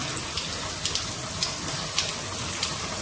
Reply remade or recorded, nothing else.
recorded